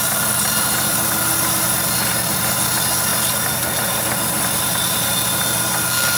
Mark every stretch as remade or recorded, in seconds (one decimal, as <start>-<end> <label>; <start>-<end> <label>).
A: 0.0-6.2 recorded